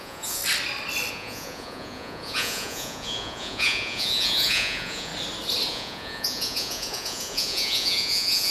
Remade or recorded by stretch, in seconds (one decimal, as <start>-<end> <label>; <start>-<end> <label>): 0.0-0.4 remade; 0.4-1.1 recorded; 1.1-5.1 remade; 5.1-5.7 recorded; 5.7-8.5 remade

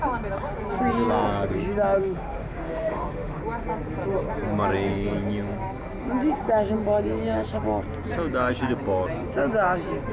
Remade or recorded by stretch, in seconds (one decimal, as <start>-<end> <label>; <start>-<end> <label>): 0.0-2.0 recorded; 2.0-3.4 remade; 3.4-10.1 recorded

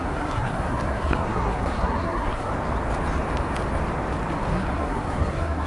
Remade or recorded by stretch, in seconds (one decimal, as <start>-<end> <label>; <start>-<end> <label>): 0.0-2.5 remade; 2.5-4.5 recorded; 4.5-5.7 remade

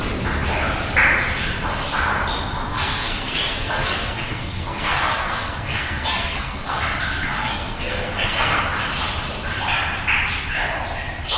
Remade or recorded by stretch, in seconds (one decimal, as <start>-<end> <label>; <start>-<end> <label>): 0.0-2.7 recorded; 2.7-6.8 remade; 6.8-7.4 recorded; 7.4-8.6 remade; 8.6-11.4 recorded